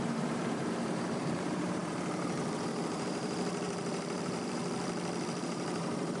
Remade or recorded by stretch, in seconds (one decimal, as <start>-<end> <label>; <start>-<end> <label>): 0.0-4.6 remade; 4.6-5.4 recorded; 5.4-6.2 remade